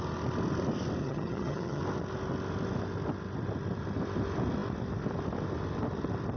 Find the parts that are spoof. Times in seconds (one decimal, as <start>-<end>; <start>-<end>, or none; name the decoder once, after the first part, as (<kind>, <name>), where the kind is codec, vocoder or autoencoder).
1.0-1.8 (vocoder, HiFi-GAN)